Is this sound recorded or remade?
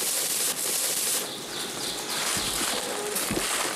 recorded